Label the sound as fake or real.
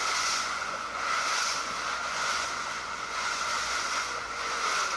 fake